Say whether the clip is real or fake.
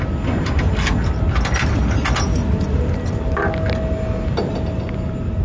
real